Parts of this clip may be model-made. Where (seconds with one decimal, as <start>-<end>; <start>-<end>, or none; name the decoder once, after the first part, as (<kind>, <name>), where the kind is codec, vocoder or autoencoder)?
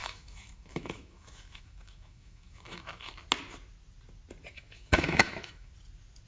0.0-3.1 (autoencoder, DAC-VAE); 4.5-5.7